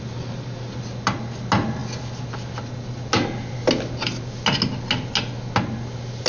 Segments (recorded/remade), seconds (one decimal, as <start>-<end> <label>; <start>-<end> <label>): 0.0-6.3 recorded